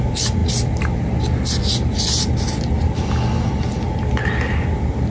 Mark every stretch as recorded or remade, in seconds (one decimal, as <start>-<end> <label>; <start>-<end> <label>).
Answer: 0.0-5.1 recorded